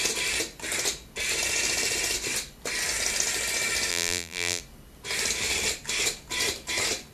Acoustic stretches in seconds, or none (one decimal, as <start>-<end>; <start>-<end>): 0.0-3.9; 4.6-7.1